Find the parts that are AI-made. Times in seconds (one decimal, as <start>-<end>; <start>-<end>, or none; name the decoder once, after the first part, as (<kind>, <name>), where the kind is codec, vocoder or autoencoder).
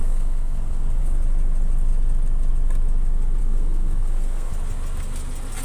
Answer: 0.0-1.0 (codec, SNAC); 3.4-4.5